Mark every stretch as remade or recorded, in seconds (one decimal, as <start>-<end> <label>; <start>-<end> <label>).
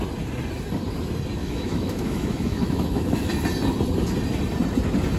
0.0-1.4 recorded; 1.4-3.3 remade; 3.3-5.2 recorded